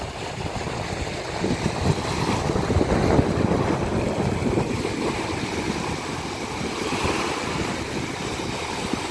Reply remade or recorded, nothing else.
recorded